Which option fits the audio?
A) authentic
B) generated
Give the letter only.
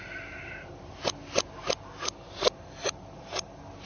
A